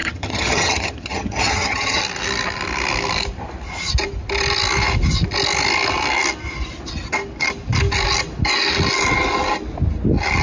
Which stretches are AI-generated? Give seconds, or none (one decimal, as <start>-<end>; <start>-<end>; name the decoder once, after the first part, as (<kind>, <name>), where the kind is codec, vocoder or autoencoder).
0.0-2.0 (vocoder, HiFi-GAN)